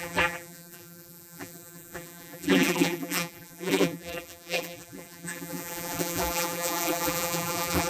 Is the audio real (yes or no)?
no